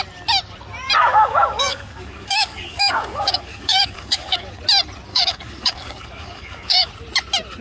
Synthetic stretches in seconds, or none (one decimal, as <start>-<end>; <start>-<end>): 1.0-4.6; 5.1-6.9